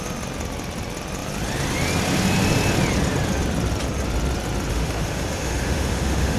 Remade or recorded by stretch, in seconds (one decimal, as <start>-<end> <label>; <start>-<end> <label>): 0.0-4.7 recorded; 4.7-6.4 remade